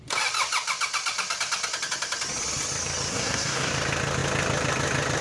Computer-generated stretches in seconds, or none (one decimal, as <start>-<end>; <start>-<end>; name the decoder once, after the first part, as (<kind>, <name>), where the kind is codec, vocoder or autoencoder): 3.1-3.7 (codec, SNAC)